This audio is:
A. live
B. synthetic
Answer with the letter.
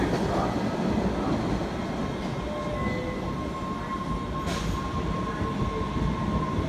A